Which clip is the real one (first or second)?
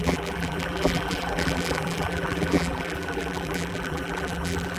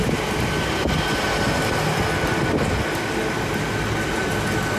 second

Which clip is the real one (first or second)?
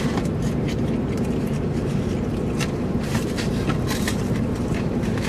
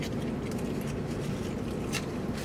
second